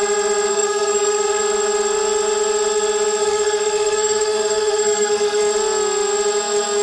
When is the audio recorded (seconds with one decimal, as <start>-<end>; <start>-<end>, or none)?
0.0-0.5; 1.4-3.2; 5.4-6.8